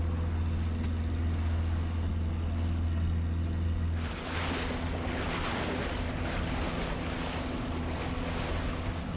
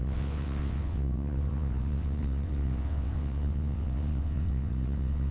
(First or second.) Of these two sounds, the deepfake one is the second